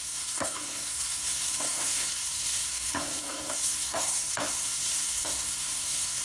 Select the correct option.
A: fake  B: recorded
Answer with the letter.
A